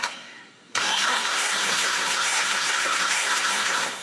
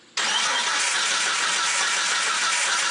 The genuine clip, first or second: second